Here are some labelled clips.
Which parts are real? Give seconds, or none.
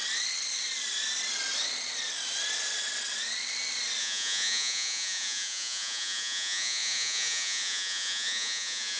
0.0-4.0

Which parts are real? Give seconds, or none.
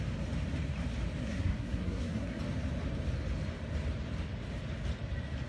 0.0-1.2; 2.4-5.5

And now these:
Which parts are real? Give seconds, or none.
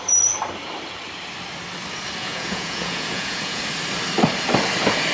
0.0-2.2; 3.6-5.1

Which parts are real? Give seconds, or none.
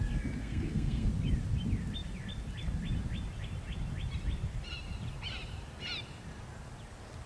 0.0-0.4; 1.1-7.3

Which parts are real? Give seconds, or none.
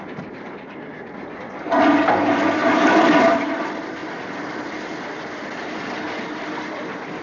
0.0-2.6; 3.6-7.2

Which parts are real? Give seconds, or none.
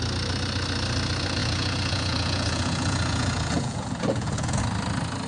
0.0-1.4; 4.6-5.3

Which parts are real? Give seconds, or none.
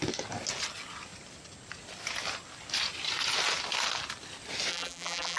0.0-4.7